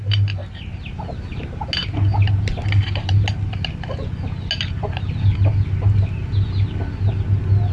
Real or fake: real